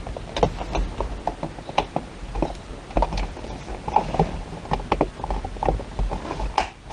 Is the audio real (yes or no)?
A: yes